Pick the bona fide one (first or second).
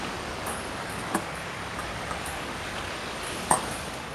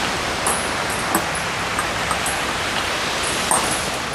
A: second